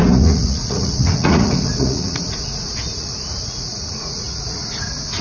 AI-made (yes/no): yes